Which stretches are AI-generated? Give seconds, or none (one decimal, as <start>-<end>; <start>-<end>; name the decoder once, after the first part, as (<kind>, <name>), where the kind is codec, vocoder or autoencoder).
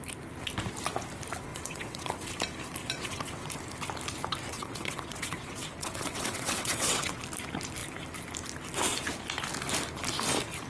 1.5-2.3 (vocoder, WaveNeXt); 2.8-3.5; 4.4-7.2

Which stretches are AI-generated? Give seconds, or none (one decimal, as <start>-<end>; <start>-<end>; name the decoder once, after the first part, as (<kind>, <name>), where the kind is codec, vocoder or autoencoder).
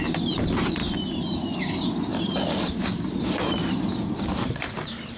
0.0-5.2 (vocoder, BigVGAN v2)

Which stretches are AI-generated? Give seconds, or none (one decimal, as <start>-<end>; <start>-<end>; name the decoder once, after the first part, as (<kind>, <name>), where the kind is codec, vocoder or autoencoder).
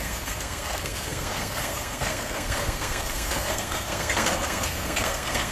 0.0-5.5 (codec, SNAC)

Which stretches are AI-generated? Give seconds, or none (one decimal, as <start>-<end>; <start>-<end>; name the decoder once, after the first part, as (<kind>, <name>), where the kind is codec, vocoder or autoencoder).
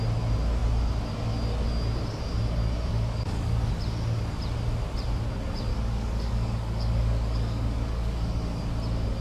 2.9-3.7 (codec, DAC); 5.7-8.6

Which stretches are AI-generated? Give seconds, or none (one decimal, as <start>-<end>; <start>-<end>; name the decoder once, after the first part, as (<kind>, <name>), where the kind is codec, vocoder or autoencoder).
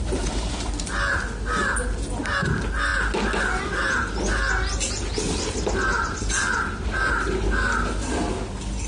none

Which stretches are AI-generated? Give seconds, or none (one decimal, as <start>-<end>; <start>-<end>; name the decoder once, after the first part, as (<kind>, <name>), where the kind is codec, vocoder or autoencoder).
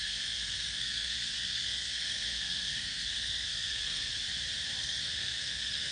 0.0-4.1 (codec, SNAC); 4.8-5.9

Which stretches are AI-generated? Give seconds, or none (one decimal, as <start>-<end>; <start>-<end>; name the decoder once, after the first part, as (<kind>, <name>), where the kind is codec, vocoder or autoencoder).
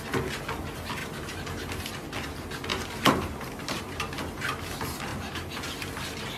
1.0-1.9 (vocoder, BigVGAN v2); 2.7-3.9; 5.1-5.9